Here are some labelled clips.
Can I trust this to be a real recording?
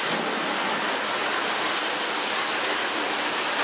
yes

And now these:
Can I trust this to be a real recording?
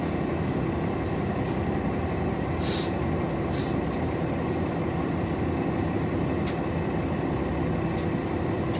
yes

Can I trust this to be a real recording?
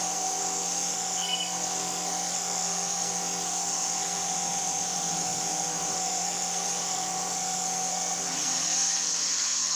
no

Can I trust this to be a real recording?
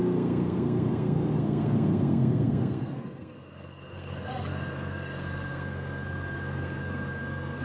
no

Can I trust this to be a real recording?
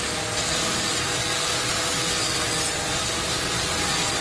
yes